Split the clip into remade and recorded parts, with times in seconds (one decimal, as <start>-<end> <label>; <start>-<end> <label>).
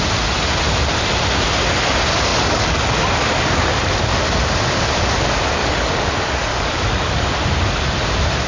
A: 0.0-2.3 recorded; 2.3-3.7 remade; 3.7-5.6 recorded; 5.6-6.1 remade; 6.1-6.5 recorded; 6.5-7.3 remade; 7.3-8.5 recorded